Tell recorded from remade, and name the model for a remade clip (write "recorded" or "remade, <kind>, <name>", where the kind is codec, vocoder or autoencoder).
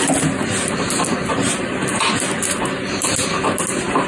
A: recorded